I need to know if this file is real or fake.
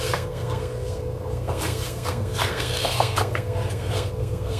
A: fake